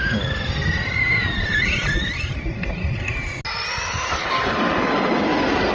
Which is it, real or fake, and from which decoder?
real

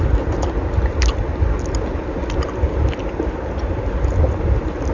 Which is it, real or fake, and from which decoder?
real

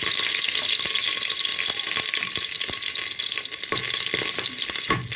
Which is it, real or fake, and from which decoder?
real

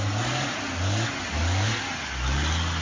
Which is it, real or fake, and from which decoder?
real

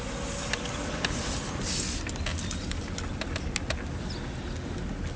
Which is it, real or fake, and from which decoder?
real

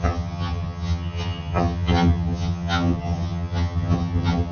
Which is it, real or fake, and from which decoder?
fake, vocoder, HiFi-GAN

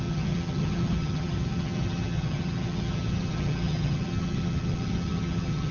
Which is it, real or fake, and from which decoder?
fake, vocoder, HiFi-GAN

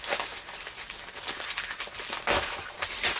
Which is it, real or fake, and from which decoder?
real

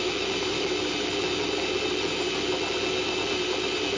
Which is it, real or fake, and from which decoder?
real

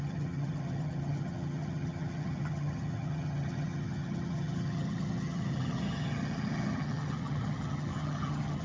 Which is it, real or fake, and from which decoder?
fake, vocoder, HiFi-GAN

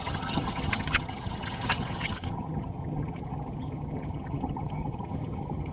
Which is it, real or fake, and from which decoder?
fake, vocoder, HiFi-GAN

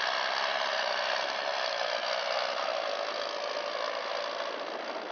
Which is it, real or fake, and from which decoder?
real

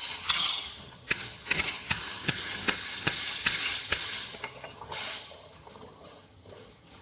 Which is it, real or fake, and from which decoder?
fake, vocoder, HiFi-GAN